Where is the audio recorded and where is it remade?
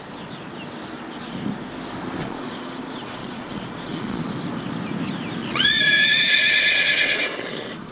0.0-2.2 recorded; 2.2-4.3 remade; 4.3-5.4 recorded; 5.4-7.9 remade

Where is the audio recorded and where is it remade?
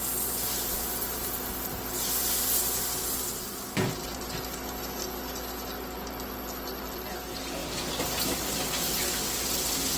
0.0-10.0 recorded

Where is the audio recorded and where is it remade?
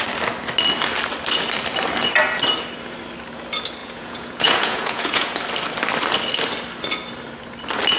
0.0-3.8 recorded; 3.8-5.4 remade; 5.4-8.0 recorded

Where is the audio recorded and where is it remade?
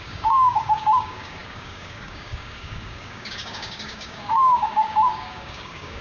0.0-6.0 remade